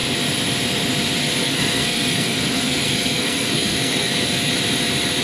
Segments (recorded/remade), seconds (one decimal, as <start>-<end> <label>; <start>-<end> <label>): 0.0-1.4 recorded; 1.4-4.5 remade; 4.5-5.2 recorded